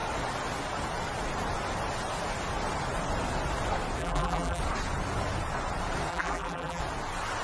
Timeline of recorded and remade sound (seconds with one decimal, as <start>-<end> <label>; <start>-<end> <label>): 0.0-4.0 recorded; 4.0-4.6 remade; 4.6-6.1 recorded; 6.1-6.8 remade; 6.8-7.4 recorded